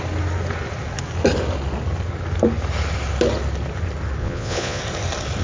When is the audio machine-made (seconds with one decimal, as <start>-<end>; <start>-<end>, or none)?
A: 4.2-4.8